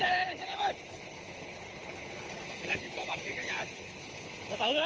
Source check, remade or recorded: remade